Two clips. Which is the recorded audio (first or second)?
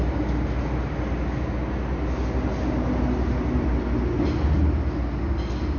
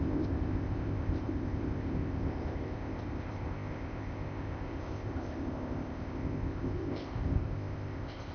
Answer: first